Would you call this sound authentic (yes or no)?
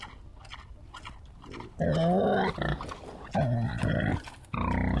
yes